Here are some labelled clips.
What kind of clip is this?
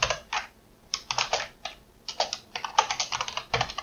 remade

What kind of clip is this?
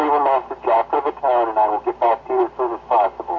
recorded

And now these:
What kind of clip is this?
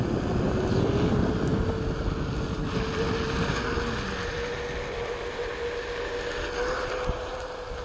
recorded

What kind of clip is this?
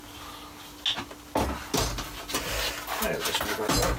recorded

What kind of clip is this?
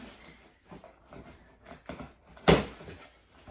recorded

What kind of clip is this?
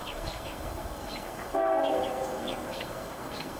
remade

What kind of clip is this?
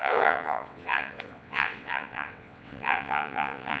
remade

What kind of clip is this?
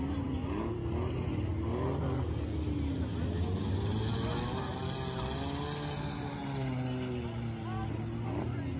recorded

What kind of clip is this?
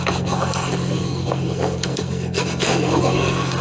remade